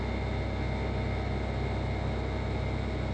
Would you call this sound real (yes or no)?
yes